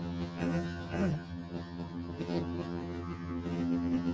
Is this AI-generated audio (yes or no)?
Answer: yes